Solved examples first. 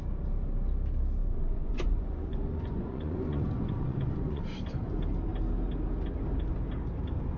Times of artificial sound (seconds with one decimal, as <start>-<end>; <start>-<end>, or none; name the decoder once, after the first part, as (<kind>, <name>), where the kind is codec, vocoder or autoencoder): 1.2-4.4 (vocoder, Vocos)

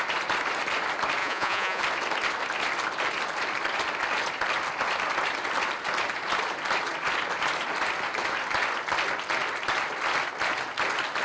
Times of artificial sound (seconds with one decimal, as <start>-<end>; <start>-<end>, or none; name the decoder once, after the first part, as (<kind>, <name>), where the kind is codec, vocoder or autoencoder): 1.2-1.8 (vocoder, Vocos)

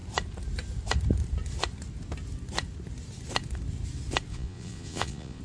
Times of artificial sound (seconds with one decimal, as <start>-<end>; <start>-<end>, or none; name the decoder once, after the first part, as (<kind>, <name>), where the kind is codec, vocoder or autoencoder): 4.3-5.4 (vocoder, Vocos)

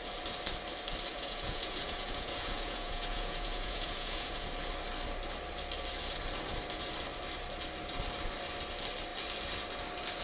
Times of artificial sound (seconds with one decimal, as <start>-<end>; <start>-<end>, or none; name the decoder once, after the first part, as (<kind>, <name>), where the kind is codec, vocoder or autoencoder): 1.1-4.5 (vocoder, Vocos)

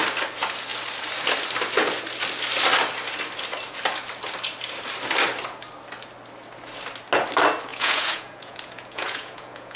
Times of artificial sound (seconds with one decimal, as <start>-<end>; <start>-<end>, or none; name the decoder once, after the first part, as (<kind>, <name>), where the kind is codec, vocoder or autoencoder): 7.7-9.8 (vocoder, Vocos)